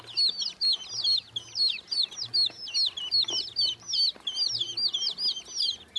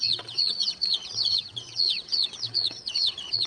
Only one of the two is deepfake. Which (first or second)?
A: second